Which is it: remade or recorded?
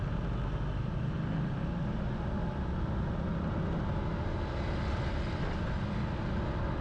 recorded